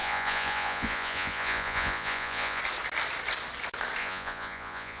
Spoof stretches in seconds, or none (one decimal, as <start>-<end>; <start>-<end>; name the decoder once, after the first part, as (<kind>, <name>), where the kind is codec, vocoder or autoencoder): 0.0-2.6 (vocoder, Vocos); 4.0-5.0